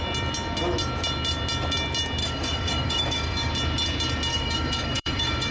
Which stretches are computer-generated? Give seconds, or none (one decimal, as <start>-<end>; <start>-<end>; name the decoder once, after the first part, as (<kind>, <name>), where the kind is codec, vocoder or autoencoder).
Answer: 2.2-3.5 (codec, DAC); 4.3-5.5